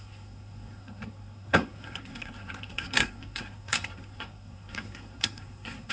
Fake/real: fake